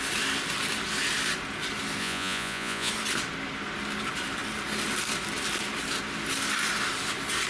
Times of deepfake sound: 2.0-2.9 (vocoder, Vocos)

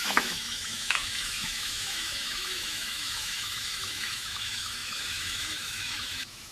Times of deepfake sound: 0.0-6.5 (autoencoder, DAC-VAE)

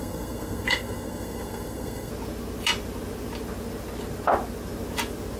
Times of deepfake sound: 0.0-2.1 (codec, SNAC)

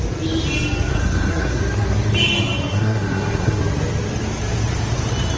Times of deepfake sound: 0.9-1.6 (codec, SNAC); 2.7-3.6